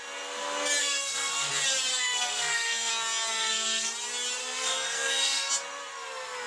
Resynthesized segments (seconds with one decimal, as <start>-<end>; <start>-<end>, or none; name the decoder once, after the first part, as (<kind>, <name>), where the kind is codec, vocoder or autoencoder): 0.8-1.5 (codec, SNAC); 1.9-2.9; 3.3-3.9; 4.4-5.5